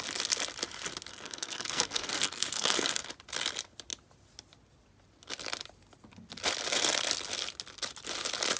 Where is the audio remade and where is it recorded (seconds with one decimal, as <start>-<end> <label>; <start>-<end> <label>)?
0.0-1.1 recorded; 1.1-3.1 remade; 3.1-8.6 recorded